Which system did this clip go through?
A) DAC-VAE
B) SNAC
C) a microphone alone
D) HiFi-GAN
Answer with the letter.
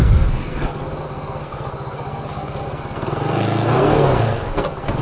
B